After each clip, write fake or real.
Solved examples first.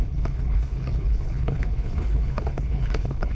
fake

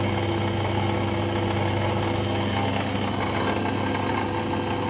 real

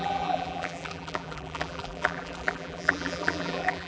fake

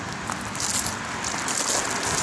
real